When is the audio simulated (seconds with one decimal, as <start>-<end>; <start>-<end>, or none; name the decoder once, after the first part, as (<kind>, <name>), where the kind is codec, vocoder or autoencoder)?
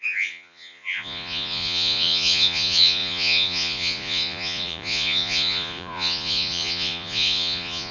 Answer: 0.0-7.9 (vocoder, Vocos)